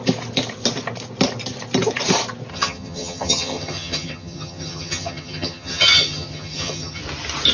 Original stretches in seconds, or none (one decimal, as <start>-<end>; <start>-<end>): 0.0-2.5; 7.0-7.5